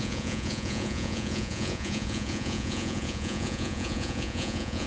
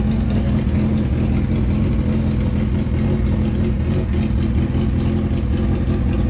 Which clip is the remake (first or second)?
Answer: first